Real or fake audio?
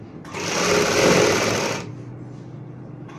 real